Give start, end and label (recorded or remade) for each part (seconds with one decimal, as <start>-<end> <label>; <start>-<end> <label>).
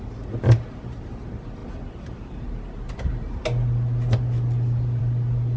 0.0-5.6 recorded